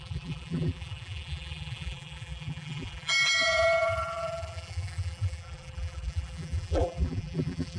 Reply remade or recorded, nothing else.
remade